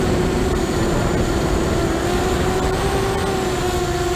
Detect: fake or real real